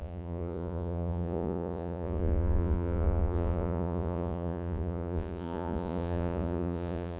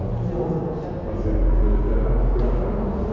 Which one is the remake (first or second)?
first